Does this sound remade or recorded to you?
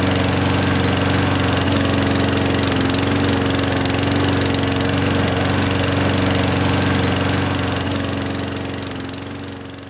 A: recorded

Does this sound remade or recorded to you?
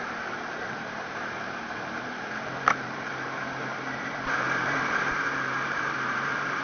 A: remade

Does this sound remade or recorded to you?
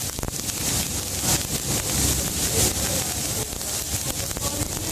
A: recorded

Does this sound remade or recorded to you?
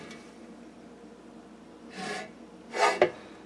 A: recorded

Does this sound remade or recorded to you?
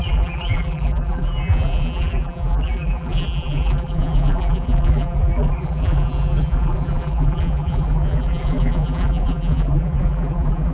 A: remade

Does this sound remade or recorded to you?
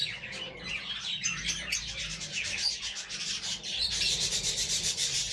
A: remade